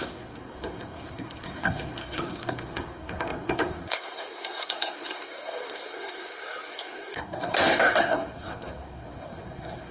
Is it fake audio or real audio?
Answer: fake